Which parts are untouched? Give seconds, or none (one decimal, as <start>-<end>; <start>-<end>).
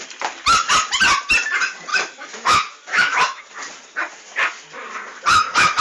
0.0-1.9; 3.4-5.3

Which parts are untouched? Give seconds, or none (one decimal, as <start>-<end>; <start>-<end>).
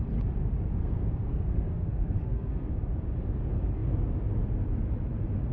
0.0-0.8; 2.7-5.5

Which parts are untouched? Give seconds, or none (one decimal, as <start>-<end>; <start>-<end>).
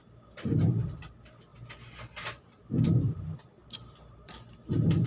0.0-5.1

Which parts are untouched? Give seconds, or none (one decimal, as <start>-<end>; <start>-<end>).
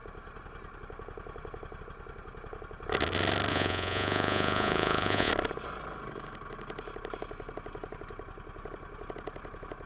0.0-3.5; 5.3-9.9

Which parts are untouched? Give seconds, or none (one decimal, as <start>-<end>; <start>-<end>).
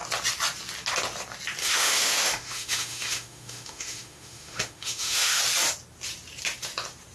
0.0-1.6; 5.4-7.1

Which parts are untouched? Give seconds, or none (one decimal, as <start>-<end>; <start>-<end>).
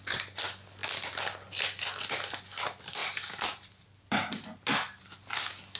0.0-5.8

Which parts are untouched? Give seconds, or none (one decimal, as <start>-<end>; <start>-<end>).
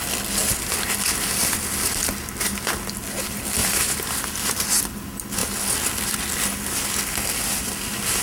0.0-3.6; 4.7-8.2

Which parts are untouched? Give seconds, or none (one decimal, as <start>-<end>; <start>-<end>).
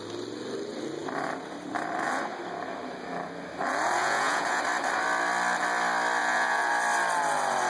0.0-4.0; 4.6-6.2; 6.7-7.7